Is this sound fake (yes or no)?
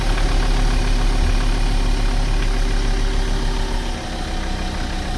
no